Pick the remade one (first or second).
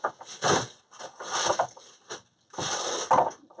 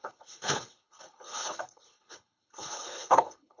second